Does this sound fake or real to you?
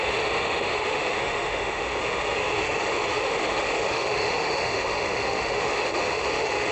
fake